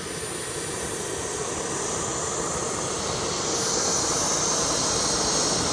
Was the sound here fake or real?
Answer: real